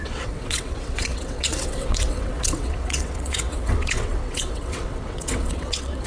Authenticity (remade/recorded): remade